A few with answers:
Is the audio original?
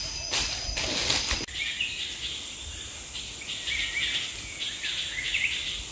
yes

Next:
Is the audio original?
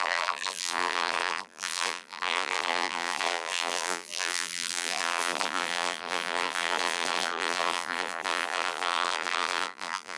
no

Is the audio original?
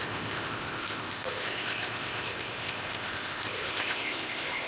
no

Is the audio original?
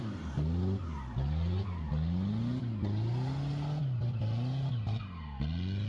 yes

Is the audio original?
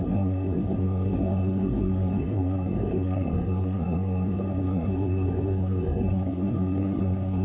no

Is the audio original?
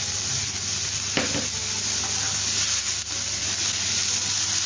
yes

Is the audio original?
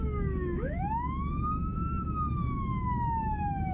no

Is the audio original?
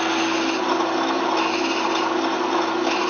yes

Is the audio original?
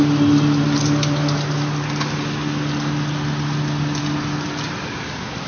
yes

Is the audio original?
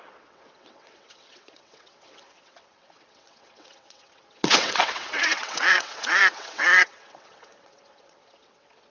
no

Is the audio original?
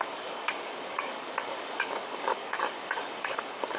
no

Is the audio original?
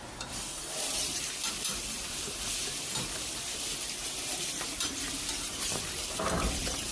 no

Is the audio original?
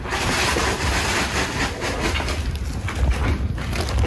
yes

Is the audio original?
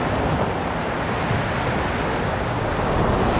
yes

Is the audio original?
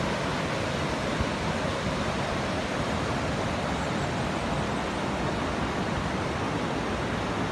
yes